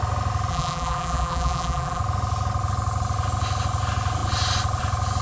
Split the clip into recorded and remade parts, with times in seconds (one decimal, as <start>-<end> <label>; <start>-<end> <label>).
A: 0.0-0.5 recorded; 0.5-2.0 remade; 2.0-5.2 recorded